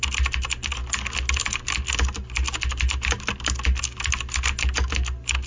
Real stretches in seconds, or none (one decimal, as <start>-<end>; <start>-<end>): 0.0-5.5